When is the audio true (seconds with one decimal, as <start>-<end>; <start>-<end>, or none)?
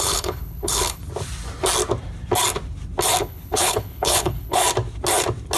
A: 1.0-3.2; 4.6-5.6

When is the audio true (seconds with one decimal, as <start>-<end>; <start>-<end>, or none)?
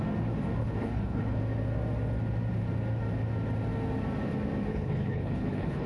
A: 0.0-0.6; 1.4-4.7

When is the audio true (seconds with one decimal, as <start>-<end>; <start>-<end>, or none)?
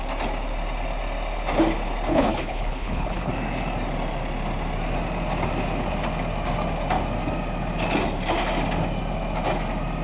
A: 0.0-2.1; 3.3-10.0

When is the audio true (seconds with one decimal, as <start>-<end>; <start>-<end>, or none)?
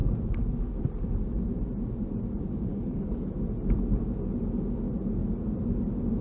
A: 0.0-2.7; 3.3-6.2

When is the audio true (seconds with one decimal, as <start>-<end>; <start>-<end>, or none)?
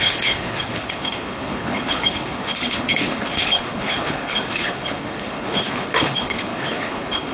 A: none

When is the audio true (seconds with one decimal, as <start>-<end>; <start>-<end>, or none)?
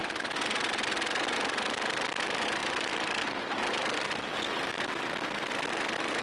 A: 0.0-6.2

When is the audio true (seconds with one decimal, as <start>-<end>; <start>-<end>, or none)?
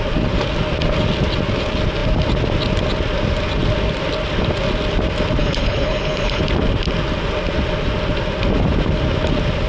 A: 0.0-5.4; 6.4-9.7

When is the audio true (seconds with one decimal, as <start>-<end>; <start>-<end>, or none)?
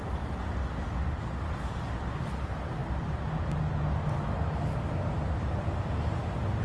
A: 0.0-6.6